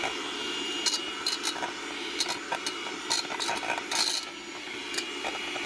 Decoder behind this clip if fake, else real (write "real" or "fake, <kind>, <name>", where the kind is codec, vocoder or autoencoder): real